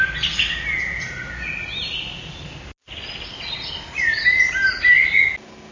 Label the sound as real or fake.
real